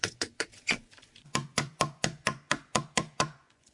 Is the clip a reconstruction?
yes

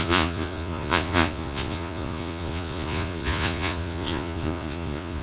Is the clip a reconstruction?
yes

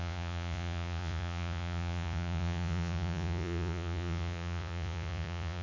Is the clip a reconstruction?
yes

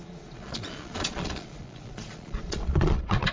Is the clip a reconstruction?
yes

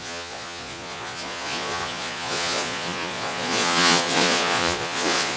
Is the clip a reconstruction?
yes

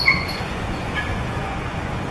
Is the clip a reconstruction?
yes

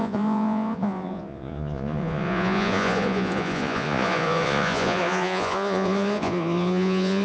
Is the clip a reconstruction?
yes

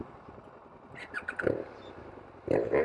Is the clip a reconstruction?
no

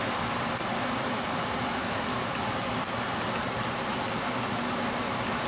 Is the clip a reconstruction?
no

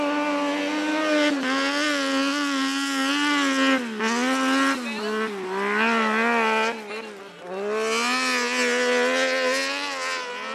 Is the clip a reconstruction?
no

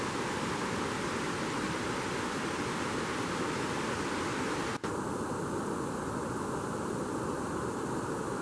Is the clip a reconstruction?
no